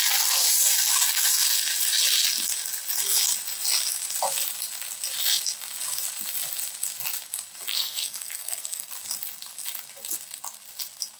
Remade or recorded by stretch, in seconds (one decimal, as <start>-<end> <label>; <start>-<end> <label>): 0.0-7.7 recorded; 7.7-8.9 remade; 8.9-11.2 recorded